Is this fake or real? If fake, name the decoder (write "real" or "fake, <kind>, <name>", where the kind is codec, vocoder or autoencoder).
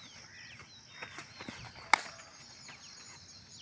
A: real